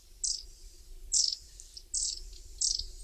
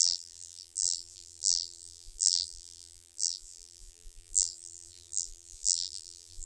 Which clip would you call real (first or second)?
first